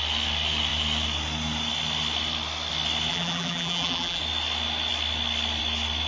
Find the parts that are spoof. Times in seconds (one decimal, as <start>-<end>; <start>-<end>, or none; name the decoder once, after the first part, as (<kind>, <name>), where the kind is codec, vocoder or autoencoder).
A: 3.1-4.2 (vocoder, BigVGAN v2)